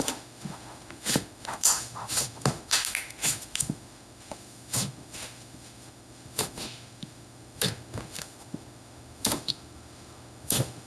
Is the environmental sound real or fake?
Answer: fake